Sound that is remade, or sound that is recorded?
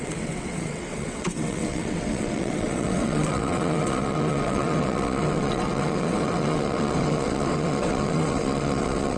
remade